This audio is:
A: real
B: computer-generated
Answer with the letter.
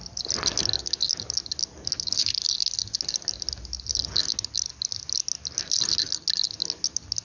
A